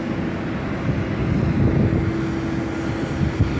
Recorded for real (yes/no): yes